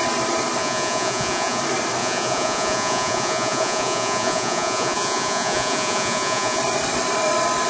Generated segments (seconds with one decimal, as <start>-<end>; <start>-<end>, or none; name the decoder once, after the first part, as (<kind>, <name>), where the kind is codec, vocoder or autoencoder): 0.6-1.6 (vocoder, Vocos); 2.0-6.6